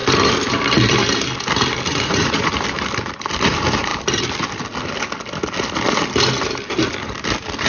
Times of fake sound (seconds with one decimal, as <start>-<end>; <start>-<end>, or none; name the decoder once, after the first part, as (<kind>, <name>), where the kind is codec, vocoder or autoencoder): 1.9-2.5 (vocoder, Vocos)